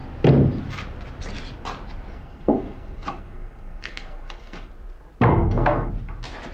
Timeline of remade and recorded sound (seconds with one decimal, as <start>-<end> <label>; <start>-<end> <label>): 0.0-2.1 recorded; 2.1-4.7 remade; 4.7-5.3 recorded; 5.3-5.9 remade; 5.9-6.5 recorded